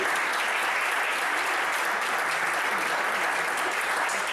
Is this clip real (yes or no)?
yes